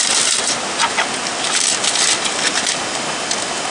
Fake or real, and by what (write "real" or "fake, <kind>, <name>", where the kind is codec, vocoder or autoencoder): real